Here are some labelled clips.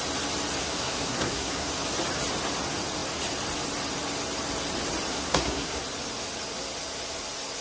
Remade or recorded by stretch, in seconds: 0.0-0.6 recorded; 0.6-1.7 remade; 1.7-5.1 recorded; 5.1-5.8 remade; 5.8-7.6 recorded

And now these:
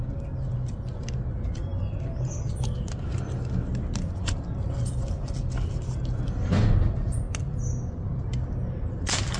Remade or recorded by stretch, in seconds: 0.0-9.4 recorded

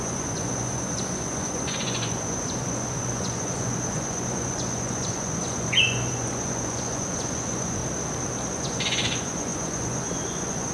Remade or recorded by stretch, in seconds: 0.0-7.8 remade; 7.8-8.5 recorded; 8.5-10.7 remade

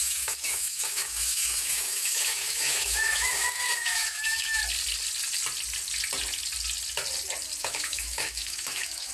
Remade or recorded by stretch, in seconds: 0.0-4.6 remade; 4.6-7.6 recorded; 7.6-9.1 remade

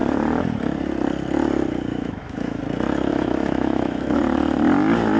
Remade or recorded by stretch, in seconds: 0.0-1.9 recorded; 1.9-2.6 remade; 2.6-3.1 recorded; 3.1-4.2 remade; 4.2-5.2 recorded

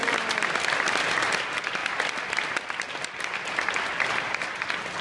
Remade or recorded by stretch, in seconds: 0.0-0.5 remade; 0.5-5.0 recorded

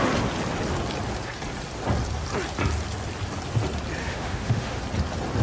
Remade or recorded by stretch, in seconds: 0.0-4.0 recorded; 4.0-4.8 remade; 4.8-5.4 recorded